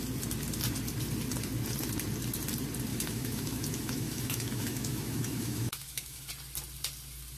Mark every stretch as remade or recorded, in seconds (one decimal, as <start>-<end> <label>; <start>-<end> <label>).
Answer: 0.0-2.9 recorded; 2.9-6.3 remade; 6.3-7.4 recorded